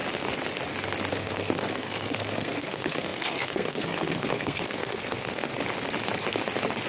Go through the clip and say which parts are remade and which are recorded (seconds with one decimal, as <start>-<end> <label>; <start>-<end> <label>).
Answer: 0.0-1.1 recorded; 1.1-5.5 remade; 5.5-6.9 recorded